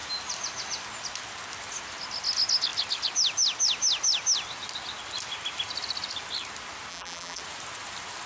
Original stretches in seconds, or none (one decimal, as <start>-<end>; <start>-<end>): 0.0-6.9; 7.4-8.3